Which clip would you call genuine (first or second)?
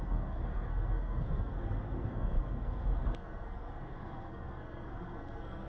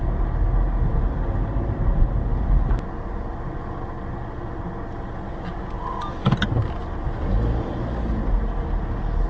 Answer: second